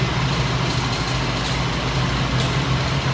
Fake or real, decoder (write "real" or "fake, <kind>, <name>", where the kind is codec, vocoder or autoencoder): real